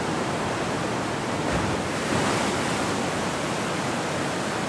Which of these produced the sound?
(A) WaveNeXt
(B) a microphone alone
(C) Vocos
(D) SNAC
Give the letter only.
B